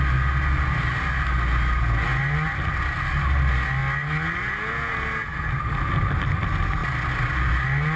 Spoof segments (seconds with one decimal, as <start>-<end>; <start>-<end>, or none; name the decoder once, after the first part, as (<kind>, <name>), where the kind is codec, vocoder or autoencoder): none